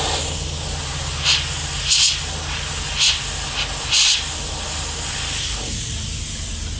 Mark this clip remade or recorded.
recorded